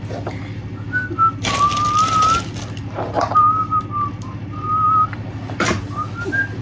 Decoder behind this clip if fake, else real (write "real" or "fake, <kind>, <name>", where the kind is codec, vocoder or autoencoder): real